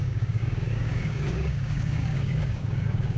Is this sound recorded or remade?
remade